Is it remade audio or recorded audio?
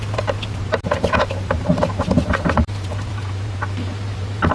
remade